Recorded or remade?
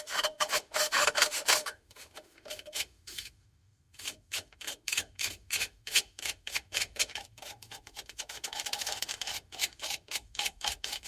remade